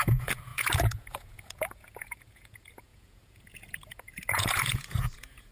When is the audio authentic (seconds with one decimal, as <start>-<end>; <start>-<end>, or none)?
none